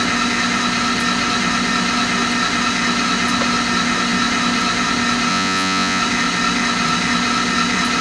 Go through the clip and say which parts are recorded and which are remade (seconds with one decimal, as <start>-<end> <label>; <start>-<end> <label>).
0.0-5.3 recorded; 5.3-6.0 remade; 6.0-8.0 recorded